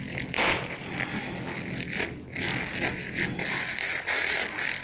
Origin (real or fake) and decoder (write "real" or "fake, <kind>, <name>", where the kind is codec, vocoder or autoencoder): real